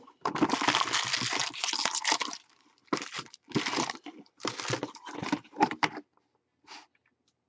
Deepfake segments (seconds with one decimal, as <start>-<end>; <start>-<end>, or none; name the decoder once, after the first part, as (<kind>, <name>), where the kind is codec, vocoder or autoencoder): none